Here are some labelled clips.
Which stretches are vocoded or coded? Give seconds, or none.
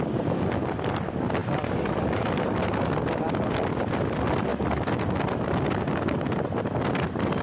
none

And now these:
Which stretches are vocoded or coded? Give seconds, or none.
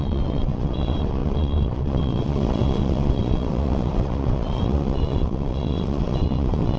0.0-6.8 (vocoder, WaveNeXt)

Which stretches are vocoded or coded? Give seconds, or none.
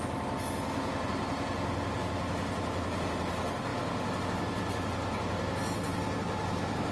none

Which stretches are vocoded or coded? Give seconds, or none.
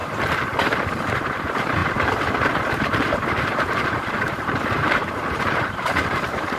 1.0-6.6 (vocoder, BigVGAN v2)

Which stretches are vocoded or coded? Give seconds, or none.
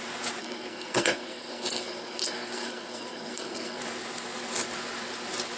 0.4-3.8 (codec, SNAC)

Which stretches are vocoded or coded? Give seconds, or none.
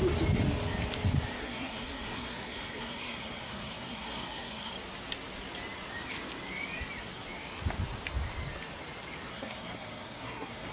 1.4-4.7 (codec, SNAC); 9.3-10.7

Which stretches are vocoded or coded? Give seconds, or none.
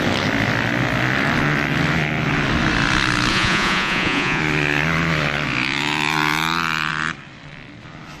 3.3-4.4 (vocoder, Vocos)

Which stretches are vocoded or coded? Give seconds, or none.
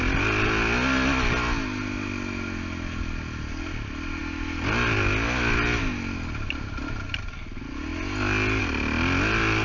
none